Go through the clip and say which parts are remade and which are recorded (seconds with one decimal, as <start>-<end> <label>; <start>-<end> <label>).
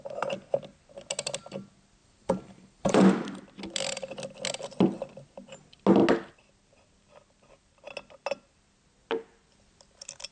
0.0-2.0 recorded; 2.0-3.4 remade; 3.4-10.3 recorded